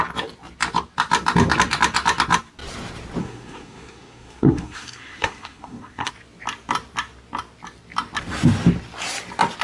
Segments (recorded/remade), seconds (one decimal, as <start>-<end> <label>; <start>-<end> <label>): 0.0-3.2 recorded; 3.2-6.1 remade; 6.1-9.6 recorded